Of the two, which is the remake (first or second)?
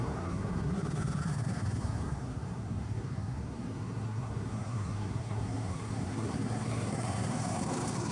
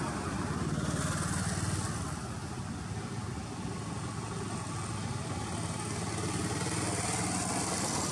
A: first